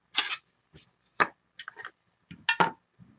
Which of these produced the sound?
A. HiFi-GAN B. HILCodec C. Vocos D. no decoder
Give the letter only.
D